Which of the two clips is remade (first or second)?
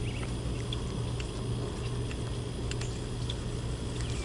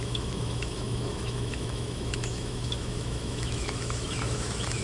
second